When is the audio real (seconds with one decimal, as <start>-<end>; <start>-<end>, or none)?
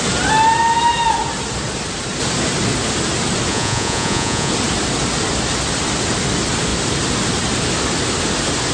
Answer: 0.0-3.5; 4.5-8.7